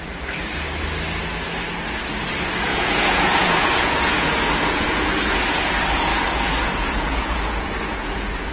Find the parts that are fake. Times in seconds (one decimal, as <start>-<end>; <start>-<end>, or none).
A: 2.7-5.4; 6.1-8.5